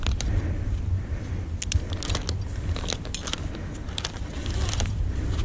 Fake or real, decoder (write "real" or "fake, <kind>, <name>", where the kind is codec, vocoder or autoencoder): real